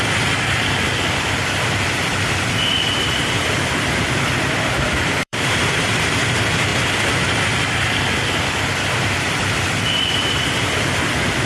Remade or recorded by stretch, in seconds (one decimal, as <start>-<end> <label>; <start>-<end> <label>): 0.0-6.7 remade; 6.7-9.2 recorded; 9.2-11.5 remade